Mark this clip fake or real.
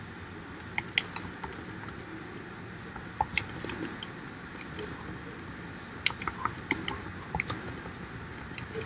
real